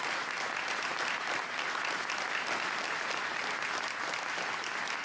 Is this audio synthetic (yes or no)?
no